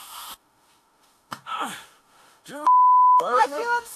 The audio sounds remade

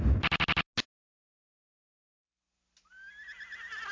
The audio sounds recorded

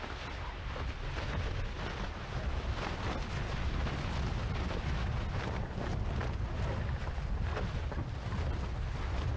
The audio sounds recorded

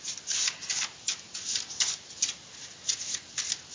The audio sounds recorded